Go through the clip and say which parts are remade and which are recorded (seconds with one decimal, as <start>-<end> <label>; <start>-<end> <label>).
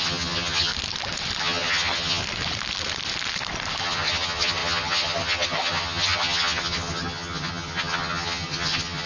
0.0-0.7 remade; 0.7-1.4 recorded; 1.4-2.2 remade; 2.2-3.8 recorded; 3.8-9.1 remade